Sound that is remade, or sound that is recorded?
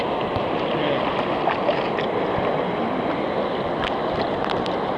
recorded